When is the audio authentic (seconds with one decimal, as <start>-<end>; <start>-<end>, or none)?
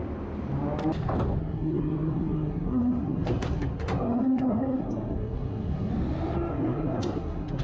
0.0-1.4; 5.9-6.5